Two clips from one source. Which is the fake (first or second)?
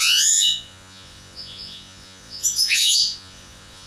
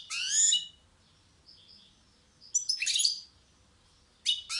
first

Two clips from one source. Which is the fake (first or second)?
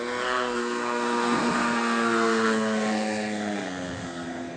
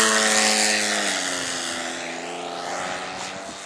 first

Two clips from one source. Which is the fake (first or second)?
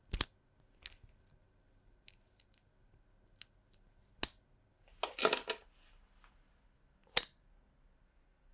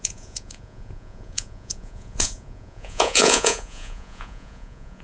second